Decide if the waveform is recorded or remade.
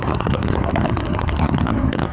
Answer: remade